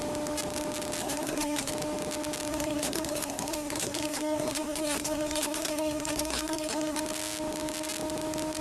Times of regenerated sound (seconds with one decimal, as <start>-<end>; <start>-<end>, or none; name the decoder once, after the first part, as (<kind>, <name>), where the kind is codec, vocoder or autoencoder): 1.0-1.7 (codec, SNAC); 2.5-7.0